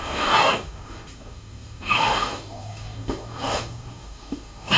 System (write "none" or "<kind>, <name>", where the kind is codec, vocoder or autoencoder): codec, DAC